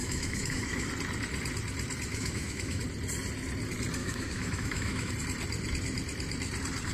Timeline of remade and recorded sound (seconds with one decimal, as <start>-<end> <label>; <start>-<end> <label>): 0.0-0.9 remade; 0.9-2.1 recorded; 2.1-2.8 remade; 2.8-4.0 recorded; 4.0-5.1 remade; 5.1-6.9 recorded

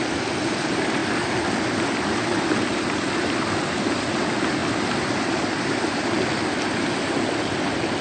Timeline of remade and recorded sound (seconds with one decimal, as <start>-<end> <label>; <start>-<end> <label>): 0.0-8.0 recorded

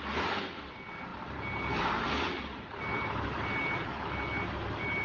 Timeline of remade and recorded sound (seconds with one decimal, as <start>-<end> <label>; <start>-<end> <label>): 0.0-5.0 recorded

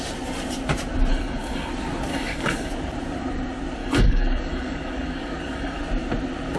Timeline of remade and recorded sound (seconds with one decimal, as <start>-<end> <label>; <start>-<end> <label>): 0.0-1.1 recorded; 1.1-1.7 remade; 1.7-2.1 recorded; 2.1-2.7 remade; 2.7-3.8 recorded; 3.8-5.8 remade; 5.8-6.6 recorded

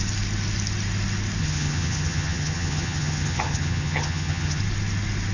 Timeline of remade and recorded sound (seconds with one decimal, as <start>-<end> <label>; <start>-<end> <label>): 0.0-1.4 recorded; 1.4-4.6 remade; 4.6-5.3 recorded